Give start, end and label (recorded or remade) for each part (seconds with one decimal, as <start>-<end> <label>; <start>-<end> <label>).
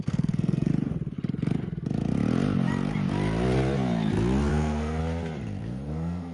0.0-0.7 remade; 0.7-4.5 recorded; 4.5-5.0 remade; 5.0-5.6 recorded; 5.6-6.3 remade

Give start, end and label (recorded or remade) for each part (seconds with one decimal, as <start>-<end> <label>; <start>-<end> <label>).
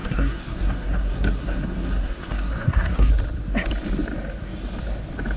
0.0-3.1 remade; 3.1-5.4 recorded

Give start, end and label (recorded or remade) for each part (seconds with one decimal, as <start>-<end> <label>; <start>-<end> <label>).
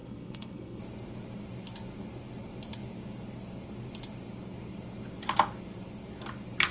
0.0-0.8 remade; 0.8-6.7 recorded